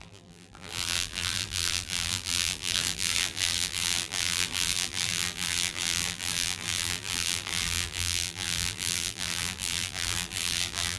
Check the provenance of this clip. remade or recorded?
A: remade